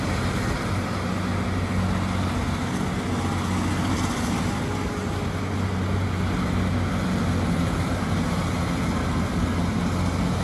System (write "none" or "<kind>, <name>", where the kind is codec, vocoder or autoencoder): none